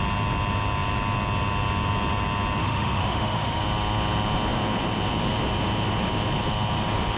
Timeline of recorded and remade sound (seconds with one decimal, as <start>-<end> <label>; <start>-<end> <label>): 0.0-2.6 recorded; 2.6-3.6 remade; 3.6-7.2 recorded